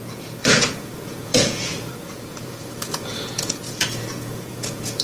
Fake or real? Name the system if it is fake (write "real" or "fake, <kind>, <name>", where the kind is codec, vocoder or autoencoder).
fake, vocoder, Vocos